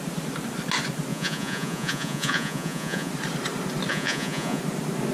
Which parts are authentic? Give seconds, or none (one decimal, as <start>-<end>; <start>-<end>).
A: 0.0-1.1; 3.1-3.9; 4.6-5.1